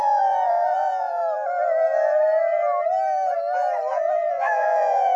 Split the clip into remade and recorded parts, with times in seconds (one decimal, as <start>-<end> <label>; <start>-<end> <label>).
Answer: 0.0-1.2 remade; 1.2-4.3 recorded; 4.3-5.2 remade